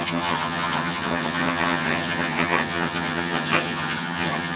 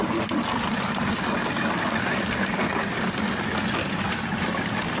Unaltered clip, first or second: second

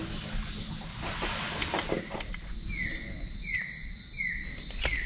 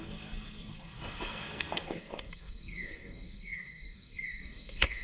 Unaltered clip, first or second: first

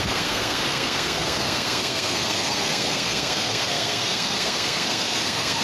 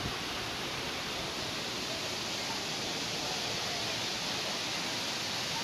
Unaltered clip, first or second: second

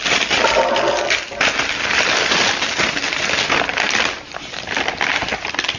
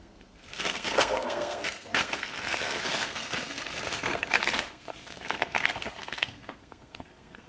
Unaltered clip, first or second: first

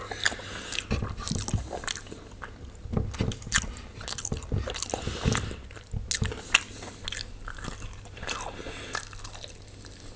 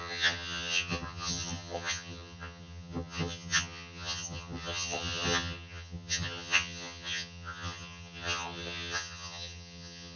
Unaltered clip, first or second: first